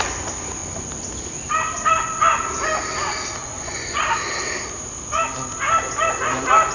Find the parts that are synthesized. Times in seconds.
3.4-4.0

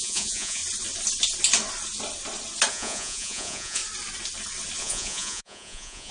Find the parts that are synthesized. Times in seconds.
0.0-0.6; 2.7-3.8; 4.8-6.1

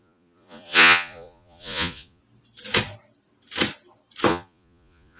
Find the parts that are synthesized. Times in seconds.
0.0-2.2; 4.3-5.2

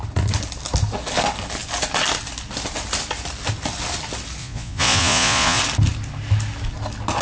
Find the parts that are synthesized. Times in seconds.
4.4-5.6

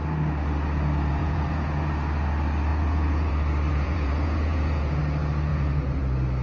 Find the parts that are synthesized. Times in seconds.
1.2-1.9; 2.7-3.3; 3.7-5.0; 5.5-6.0